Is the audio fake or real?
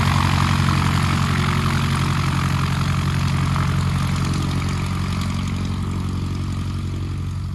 real